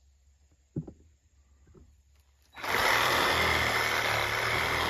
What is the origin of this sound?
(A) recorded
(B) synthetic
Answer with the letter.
A